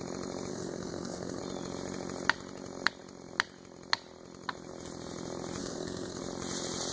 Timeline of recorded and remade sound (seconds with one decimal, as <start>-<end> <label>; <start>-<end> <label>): 0.0-0.5 recorded; 0.5-1.4 remade; 1.4-5.6 recorded; 5.6-6.2 remade; 6.2-6.9 recorded